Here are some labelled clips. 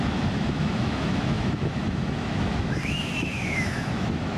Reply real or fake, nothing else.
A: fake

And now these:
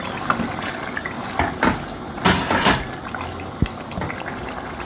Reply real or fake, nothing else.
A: real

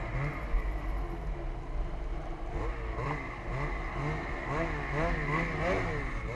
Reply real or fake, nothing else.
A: real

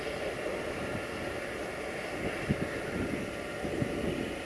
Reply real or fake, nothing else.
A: real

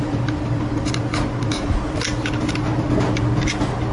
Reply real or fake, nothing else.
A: real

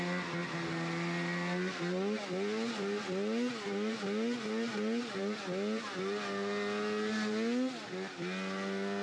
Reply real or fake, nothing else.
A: real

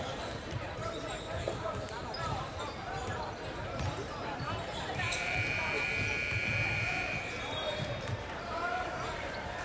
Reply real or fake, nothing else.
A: fake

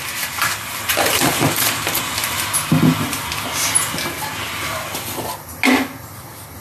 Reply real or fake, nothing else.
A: real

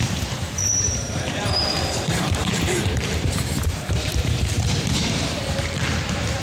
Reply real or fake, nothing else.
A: fake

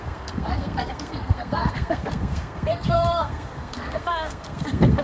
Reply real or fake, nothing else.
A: fake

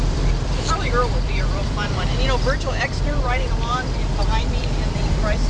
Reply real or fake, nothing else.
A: fake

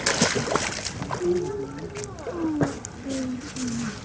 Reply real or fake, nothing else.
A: real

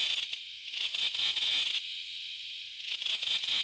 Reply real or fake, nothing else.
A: fake